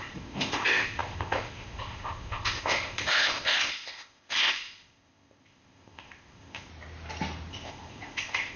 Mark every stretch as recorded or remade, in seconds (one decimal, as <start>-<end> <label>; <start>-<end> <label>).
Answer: 0.0-6.7 remade; 6.7-7.5 recorded; 7.5-8.6 remade